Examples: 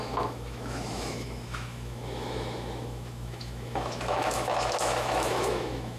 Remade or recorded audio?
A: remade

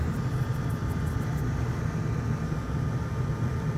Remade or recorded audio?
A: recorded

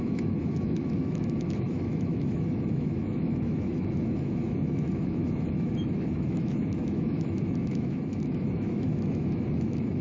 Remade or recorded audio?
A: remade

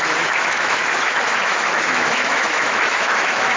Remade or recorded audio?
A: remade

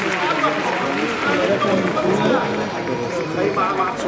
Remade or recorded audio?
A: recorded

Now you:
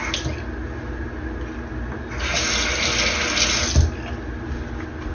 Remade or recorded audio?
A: recorded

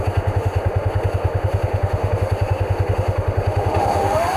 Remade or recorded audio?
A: remade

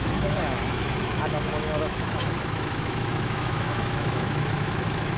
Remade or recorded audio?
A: remade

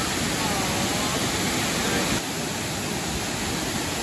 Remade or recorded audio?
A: recorded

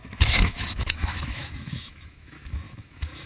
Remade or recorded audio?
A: remade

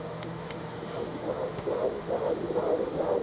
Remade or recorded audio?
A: remade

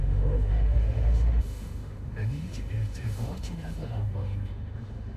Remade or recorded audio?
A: remade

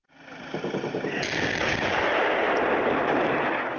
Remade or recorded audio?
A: recorded